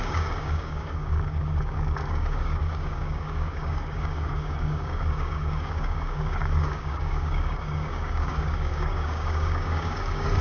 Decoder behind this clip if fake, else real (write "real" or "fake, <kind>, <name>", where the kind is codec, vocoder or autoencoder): fake, codec, DAC